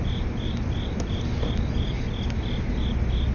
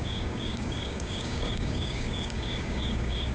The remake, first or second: second